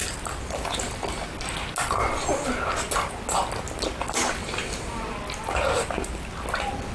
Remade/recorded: recorded